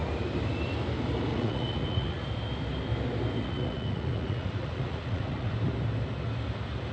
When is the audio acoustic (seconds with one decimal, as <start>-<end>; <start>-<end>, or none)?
0.0-1.3; 2.2-3.4; 5.5-6.9